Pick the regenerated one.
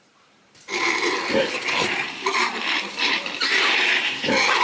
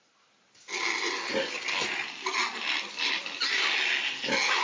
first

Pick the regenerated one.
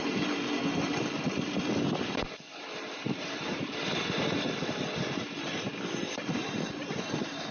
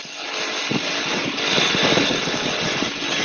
first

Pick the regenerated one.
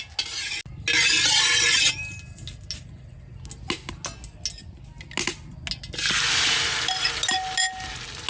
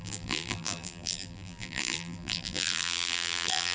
second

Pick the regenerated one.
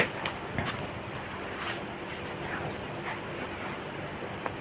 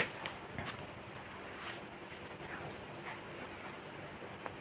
first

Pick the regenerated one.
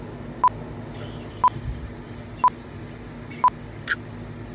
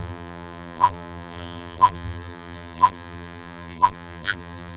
second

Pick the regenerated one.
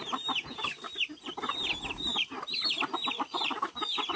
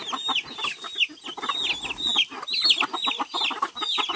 first